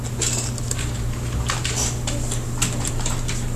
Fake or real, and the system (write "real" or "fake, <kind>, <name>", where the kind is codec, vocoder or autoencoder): real